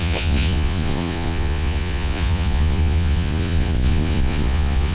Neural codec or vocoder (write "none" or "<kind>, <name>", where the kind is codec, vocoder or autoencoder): vocoder, Vocos